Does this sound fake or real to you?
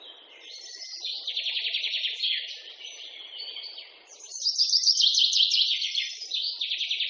real